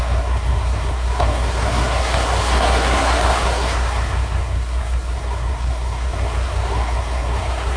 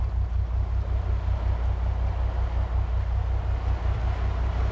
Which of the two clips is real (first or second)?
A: second